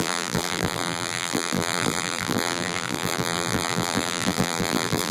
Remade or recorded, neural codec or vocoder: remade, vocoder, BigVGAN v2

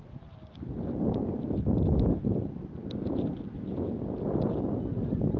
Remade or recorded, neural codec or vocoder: recorded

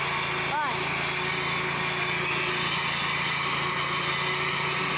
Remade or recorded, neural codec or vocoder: recorded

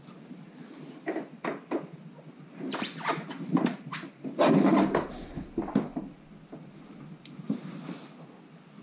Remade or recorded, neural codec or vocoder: recorded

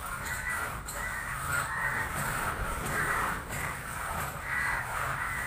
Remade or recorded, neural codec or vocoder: remade, codec, DAC